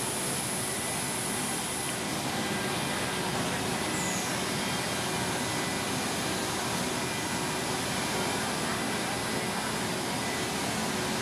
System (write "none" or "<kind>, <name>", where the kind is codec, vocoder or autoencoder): none